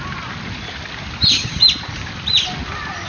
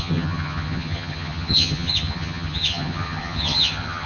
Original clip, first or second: first